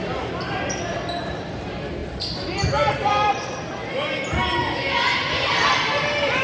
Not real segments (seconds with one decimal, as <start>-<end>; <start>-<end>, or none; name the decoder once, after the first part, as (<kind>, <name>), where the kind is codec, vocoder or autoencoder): none